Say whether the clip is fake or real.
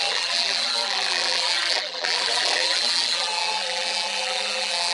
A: fake